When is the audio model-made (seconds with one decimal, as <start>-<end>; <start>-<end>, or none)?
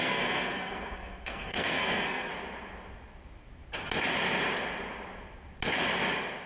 0.0-2.3